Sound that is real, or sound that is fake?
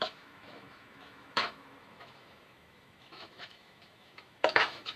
fake